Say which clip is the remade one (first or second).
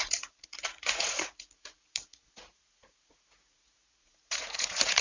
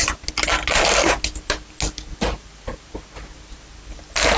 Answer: first